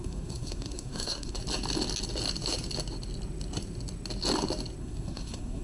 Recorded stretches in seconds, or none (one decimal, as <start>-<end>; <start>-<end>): 1.4-4.8